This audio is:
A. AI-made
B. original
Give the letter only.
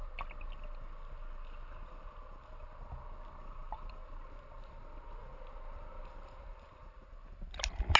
B